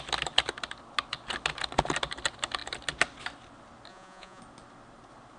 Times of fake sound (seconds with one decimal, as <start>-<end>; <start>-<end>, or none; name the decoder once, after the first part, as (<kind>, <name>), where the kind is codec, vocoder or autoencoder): 3.9-4.4 (vocoder, Vocos)